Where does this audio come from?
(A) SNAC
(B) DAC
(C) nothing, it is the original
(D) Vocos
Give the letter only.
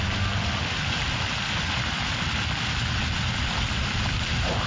C